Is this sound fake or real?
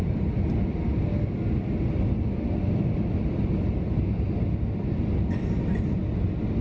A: real